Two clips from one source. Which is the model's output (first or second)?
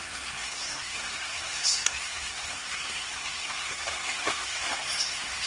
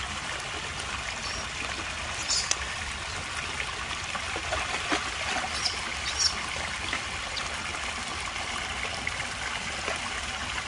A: first